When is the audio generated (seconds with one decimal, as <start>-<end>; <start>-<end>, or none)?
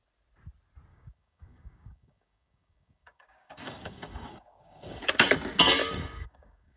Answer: 0.9-5.0; 5.8-6.8